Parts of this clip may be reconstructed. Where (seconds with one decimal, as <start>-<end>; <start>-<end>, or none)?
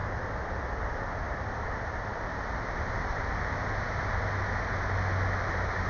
0.0-1.0; 2.1-3.3